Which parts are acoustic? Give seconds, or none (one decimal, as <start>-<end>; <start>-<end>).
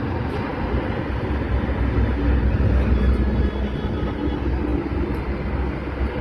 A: 0.0-6.2